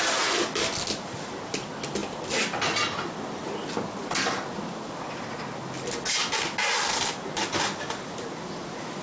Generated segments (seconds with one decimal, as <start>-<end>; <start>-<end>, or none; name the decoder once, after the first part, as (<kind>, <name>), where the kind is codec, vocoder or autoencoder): none